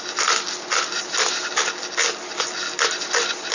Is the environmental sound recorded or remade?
recorded